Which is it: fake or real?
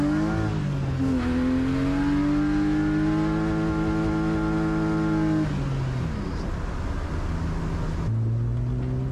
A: real